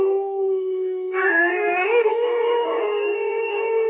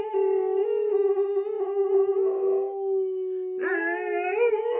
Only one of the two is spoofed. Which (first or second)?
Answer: first